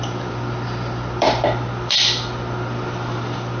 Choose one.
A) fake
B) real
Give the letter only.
A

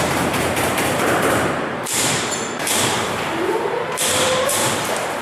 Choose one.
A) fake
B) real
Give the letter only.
A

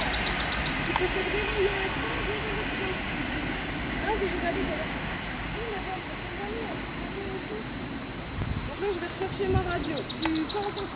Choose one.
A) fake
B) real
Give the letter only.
B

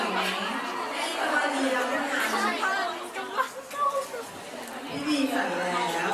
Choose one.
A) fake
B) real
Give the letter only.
B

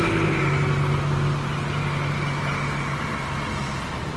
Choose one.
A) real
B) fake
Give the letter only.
A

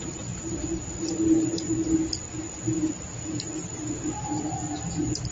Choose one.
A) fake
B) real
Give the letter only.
B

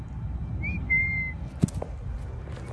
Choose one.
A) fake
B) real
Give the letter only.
B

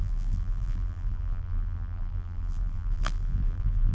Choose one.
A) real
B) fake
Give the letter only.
B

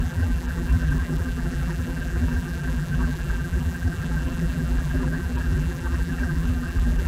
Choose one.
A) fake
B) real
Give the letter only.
A